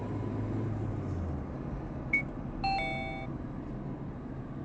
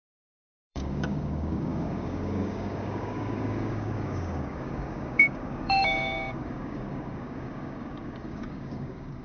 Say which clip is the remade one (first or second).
second